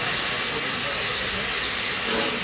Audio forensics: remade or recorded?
recorded